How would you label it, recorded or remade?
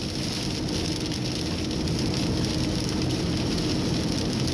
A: recorded